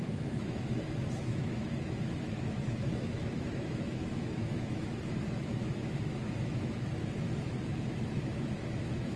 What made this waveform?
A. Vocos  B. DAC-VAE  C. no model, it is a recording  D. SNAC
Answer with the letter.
B